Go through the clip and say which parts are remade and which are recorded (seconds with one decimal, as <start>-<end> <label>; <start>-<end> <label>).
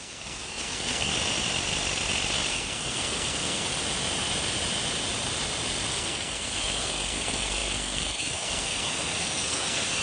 0.0-1.1 remade; 1.1-2.5 recorded; 2.5-3.7 remade; 3.7-5.9 recorded; 5.9-10.0 remade